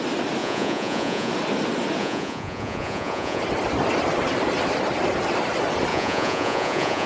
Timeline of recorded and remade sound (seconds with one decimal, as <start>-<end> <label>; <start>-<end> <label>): 0.0-0.4 recorded; 0.4-1.3 remade; 1.3-2.0 recorded; 2.0-3.4 remade; 3.4-5.9 recorded; 5.9-7.1 remade

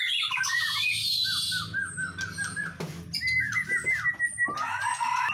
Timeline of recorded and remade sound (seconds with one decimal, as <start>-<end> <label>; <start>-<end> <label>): 0.0-5.3 recorded

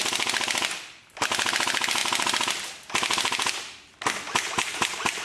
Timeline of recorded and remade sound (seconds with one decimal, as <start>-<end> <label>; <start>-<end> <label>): 0.0-5.2 recorded

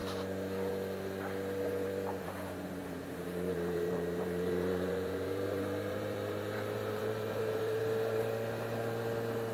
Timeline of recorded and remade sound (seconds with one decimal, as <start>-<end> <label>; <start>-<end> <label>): 0.0-2.8 recorded; 2.8-7.8 remade; 7.8-9.5 recorded

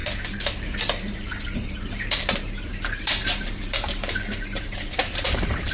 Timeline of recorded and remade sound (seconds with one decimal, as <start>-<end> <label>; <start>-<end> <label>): 0.0-5.7 remade